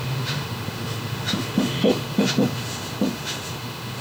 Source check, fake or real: fake